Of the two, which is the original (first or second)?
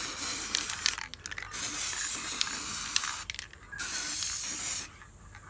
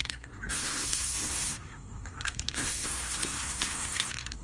first